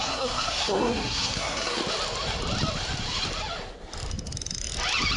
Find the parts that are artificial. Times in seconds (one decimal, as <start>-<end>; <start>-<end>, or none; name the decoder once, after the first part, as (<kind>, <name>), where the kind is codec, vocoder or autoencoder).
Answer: 0.0-1.8 (codec, SNAC)